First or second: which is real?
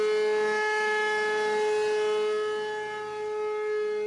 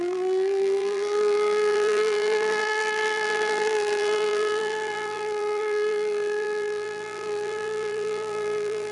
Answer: first